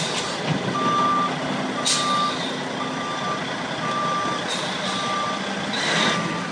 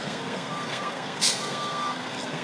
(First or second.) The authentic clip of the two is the first